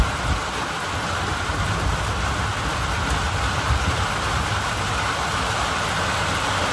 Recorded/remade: recorded